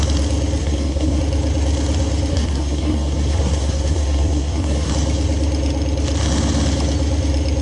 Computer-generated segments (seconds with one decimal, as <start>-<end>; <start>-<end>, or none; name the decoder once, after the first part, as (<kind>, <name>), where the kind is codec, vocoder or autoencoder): 0.6-1.2 (codec, SNAC); 2.3-4.9